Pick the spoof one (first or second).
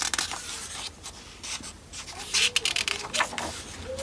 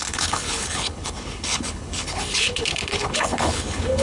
second